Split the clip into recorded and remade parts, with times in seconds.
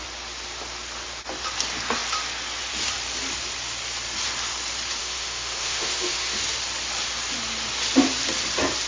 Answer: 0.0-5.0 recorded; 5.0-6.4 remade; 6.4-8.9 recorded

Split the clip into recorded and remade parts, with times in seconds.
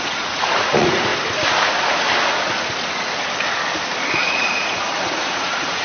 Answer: 0.0-1.1 remade; 1.1-4.3 recorded; 4.3-5.8 remade